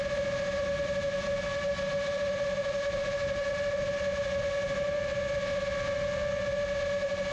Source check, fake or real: real